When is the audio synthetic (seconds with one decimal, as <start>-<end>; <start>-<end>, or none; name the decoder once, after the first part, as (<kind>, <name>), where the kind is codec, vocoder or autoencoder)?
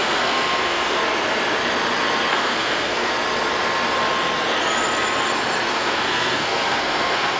0.0-1.0 (codec, SNAC); 2.3-3.1; 5.7-7.4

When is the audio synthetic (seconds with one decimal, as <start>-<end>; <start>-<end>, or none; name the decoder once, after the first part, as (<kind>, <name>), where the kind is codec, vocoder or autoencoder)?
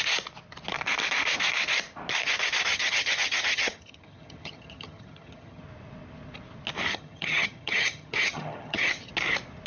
2.7-5.6 (vocoder, HiFi-GAN); 6.9-9.1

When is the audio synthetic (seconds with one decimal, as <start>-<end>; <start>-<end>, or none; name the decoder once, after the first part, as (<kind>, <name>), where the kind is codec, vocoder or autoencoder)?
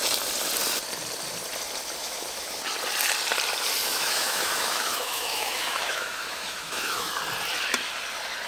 2.0-2.6 (autoencoder, DAC-VAE); 3.9-7.1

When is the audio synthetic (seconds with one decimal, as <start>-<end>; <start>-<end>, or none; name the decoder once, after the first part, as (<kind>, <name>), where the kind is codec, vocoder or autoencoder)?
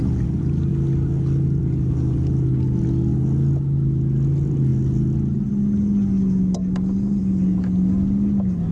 none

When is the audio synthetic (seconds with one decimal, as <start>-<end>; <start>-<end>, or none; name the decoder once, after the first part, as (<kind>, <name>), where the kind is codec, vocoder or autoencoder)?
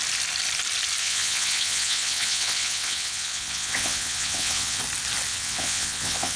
1.0-4.8 (vocoder, WaveNeXt); 5.3-6.4